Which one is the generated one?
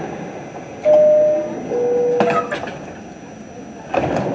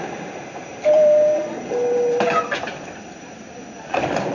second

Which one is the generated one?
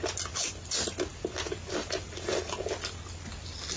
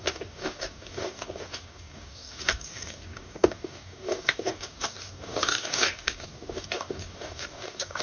second